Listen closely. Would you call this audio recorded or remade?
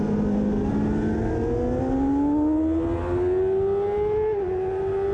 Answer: recorded